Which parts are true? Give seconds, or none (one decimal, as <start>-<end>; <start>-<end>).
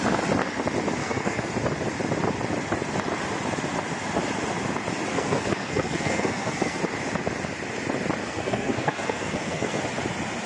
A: 0.0-1.0; 1.5-5.1; 6.8-8.2; 9.8-10.5